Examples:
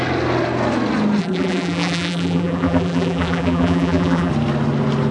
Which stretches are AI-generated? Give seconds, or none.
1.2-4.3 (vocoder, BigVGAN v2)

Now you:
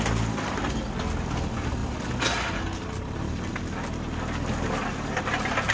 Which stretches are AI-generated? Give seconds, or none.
none

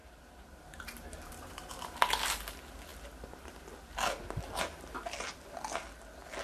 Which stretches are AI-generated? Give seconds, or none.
0.0-2.0 (vocoder, BigVGAN v2)

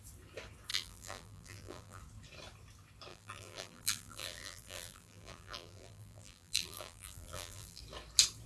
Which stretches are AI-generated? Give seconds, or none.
0.7-2.0 (vocoder, BigVGAN v2); 3.1-7.8

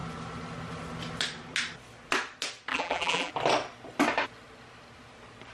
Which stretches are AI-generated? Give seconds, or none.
2.7-3.3 (vocoder, BigVGAN v2)

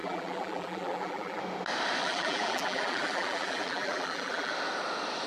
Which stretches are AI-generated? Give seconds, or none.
0.0-1.4 (vocoder, BigVGAN v2); 2.0-4.5